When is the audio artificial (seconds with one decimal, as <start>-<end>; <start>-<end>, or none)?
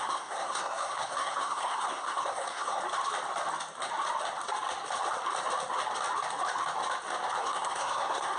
0.0-2.8; 7.4-8.4